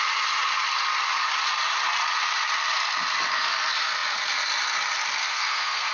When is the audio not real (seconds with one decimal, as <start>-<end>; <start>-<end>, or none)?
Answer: 5.2-5.9